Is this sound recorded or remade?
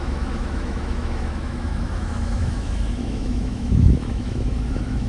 remade